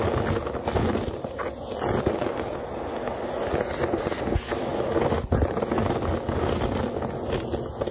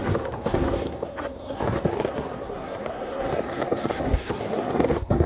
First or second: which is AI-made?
second